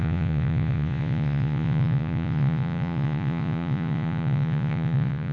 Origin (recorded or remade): remade